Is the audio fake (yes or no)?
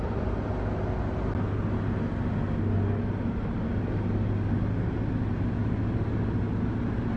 no